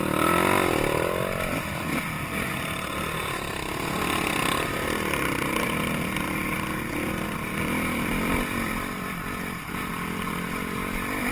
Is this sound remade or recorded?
remade